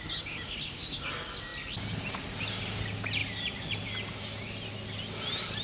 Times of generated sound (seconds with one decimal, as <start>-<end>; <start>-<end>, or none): none